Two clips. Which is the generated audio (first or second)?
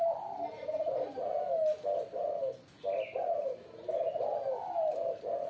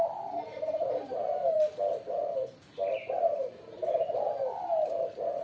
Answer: second